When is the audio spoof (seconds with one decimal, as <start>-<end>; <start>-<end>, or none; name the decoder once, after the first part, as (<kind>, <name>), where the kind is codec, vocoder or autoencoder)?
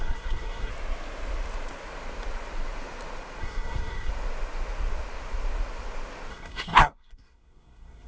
0.0-0.7 (codec, SNAC); 3.4-4.1; 6.3-8.1